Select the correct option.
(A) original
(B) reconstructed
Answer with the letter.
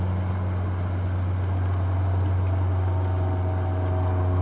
A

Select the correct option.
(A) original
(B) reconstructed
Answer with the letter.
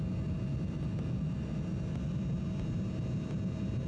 A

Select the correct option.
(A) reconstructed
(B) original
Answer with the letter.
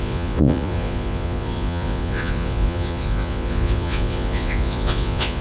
A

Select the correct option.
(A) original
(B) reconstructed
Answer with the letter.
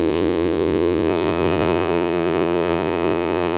B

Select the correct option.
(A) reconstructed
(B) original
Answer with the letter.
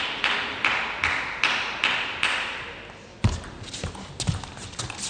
B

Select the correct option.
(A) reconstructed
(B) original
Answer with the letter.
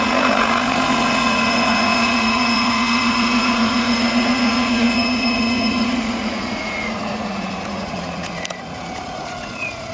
A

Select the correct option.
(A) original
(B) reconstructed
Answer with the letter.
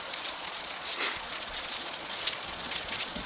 B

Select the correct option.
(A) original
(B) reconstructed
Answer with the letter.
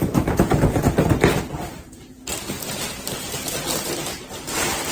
A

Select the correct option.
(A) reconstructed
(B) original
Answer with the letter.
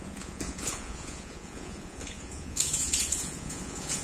A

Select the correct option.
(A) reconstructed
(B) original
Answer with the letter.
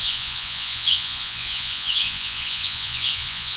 A